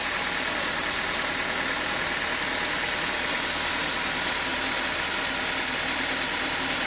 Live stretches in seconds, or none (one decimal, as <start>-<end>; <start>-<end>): 0.0-6.9